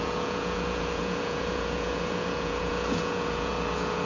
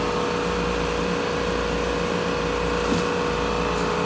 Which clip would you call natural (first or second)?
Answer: second